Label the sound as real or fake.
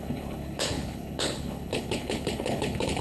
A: fake